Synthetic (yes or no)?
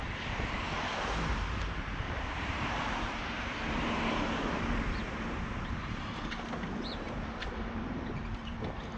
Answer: yes